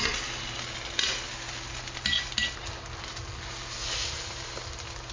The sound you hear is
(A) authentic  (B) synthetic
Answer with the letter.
A